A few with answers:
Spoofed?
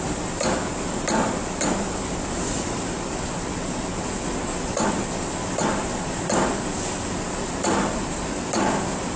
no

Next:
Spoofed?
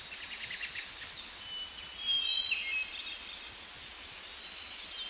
no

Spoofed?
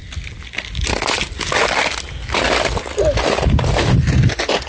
no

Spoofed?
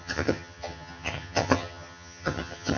yes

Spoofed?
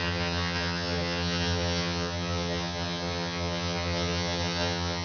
yes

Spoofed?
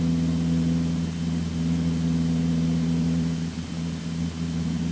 no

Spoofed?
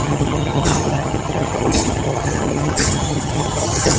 yes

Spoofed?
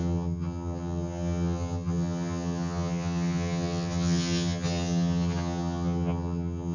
yes